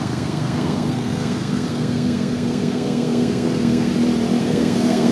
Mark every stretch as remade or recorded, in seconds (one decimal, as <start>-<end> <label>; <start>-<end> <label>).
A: 0.0-3.9 remade; 3.9-4.4 recorded; 4.4-5.1 remade